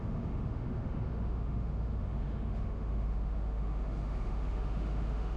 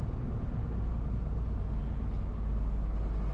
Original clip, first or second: second